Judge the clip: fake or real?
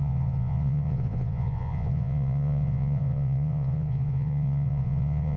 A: fake